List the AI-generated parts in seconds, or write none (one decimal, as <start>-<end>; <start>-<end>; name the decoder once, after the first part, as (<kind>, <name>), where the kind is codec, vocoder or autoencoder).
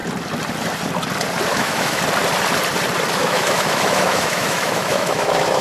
1.5-2.0 (autoencoder, DAC-VAE); 3.2-5.6